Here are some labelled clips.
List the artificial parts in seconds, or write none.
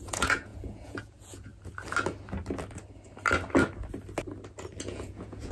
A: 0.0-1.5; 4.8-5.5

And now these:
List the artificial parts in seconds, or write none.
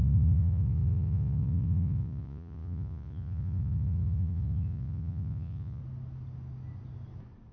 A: 0.0-5.8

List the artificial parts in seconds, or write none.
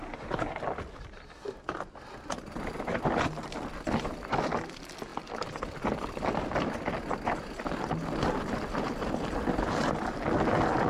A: none